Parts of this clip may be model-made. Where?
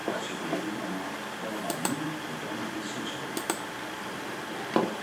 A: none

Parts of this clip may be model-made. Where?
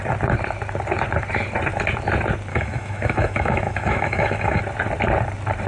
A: 2.5-4.6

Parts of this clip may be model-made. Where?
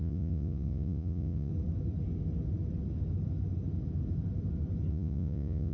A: 0.0-1.5; 4.9-5.7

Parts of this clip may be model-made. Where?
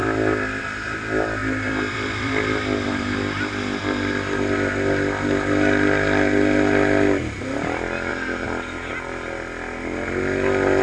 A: 1.4-4.5; 8.1-8.9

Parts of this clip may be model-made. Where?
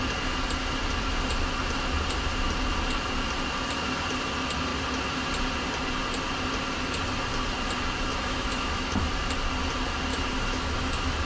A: 8.1-9.1; 10.1-11.2